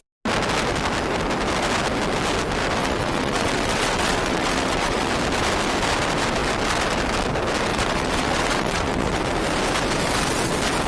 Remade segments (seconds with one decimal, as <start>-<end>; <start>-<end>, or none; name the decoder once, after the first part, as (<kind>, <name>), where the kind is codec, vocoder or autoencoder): 2.8-5.1 (vocoder, WaveNeXt); 7.7-9.2